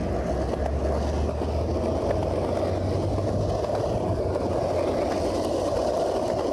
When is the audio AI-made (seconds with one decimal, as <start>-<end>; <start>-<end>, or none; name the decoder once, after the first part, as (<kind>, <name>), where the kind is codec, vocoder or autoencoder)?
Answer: none